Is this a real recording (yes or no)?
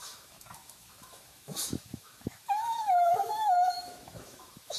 no